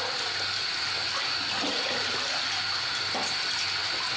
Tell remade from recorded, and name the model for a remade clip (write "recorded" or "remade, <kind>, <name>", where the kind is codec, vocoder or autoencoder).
recorded